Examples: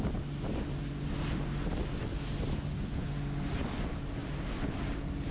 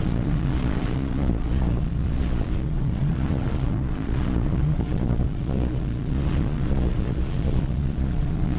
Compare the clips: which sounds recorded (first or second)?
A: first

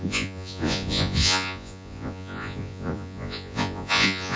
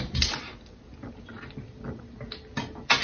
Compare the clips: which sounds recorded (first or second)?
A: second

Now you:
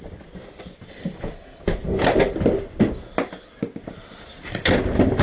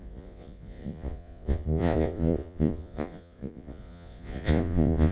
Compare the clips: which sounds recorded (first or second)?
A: first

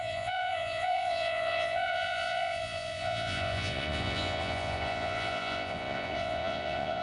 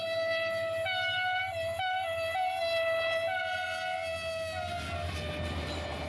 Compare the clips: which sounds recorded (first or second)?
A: second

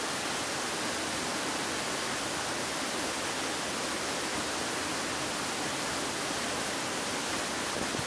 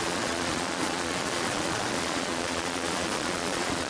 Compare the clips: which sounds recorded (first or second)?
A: first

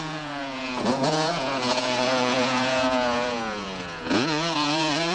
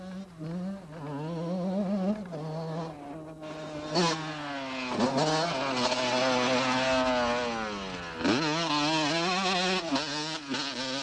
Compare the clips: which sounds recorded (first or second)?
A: second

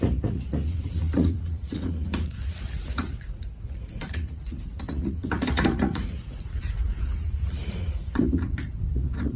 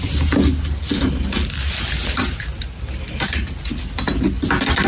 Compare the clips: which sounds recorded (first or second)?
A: second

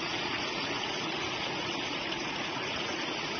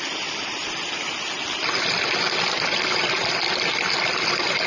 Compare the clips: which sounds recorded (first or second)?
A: second